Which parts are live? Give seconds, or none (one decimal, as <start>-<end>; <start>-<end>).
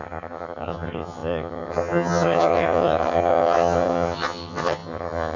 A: none